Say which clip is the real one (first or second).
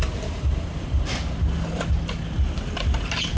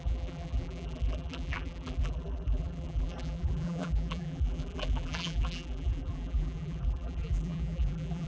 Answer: first